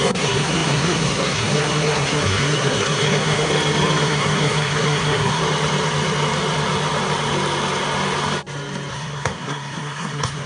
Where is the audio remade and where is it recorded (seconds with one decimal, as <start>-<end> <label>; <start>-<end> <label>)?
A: 0.0-3.5 remade; 3.5-4.0 recorded; 4.0-5.4 remade; 5.4-8.9 recorded; 8.9-10.5 remade